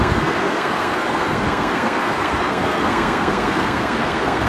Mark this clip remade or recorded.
remade